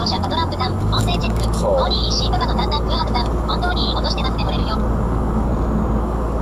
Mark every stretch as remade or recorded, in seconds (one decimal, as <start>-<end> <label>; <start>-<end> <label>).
0.0-5.5 remade; 5.5-6.0 recorded; 6.0-6.4 remade